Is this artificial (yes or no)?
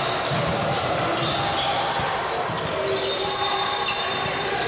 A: no